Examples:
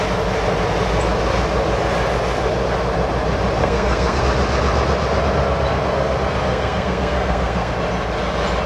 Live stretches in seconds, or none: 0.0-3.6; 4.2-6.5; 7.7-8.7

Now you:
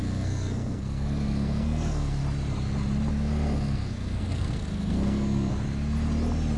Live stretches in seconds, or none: 2.2-3.1; 5.5-6.6

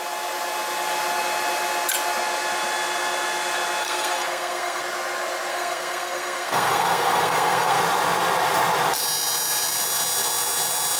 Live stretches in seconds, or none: 0.0-3.8; 4.8-5.5; 7.8-11.0

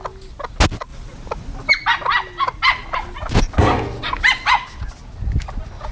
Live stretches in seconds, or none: 0.0-5.9

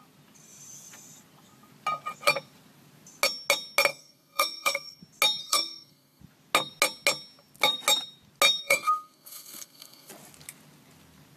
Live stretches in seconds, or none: 0.0-3.9; 5.0-5.4; 6.2-8.6; 10.1-11.4